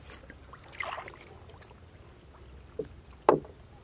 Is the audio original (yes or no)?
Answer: yes